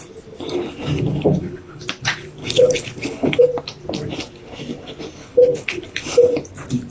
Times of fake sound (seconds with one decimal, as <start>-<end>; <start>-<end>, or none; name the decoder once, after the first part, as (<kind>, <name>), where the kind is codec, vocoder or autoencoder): 1.1-1.8 (codec, HILCodec); 2.4-3.4; 5.2-6.0